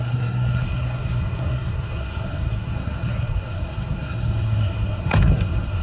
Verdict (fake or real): fake